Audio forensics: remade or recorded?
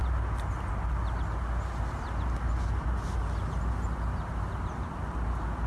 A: recorded